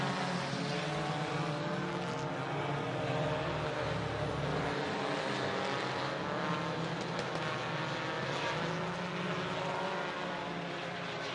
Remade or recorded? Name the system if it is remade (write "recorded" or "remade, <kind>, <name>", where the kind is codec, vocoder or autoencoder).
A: recorded